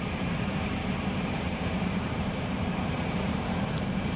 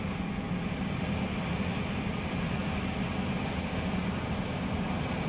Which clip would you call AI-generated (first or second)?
first